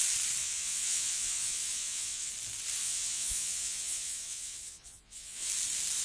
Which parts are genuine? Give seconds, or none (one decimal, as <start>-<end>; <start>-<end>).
0.0-0.4; 2.3-2.8; 5.5-6.0